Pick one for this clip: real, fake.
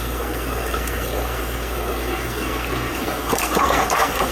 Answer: fake